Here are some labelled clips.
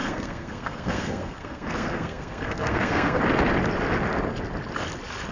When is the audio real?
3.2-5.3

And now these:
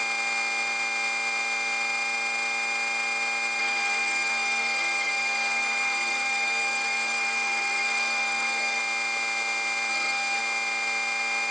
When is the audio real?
0.0-3.6; 8.8-9.9; 10.4-11.5

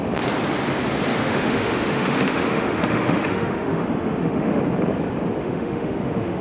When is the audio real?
0.0-1.1; 4.6-5.4